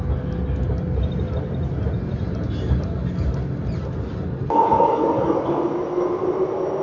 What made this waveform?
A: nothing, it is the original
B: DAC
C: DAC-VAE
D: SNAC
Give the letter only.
A